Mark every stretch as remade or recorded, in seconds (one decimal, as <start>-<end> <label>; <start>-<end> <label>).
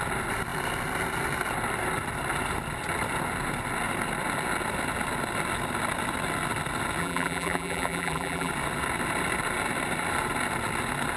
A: 0.0-7.0 recorded; 7.0-8.5 remade; 8.5-11.2 recorded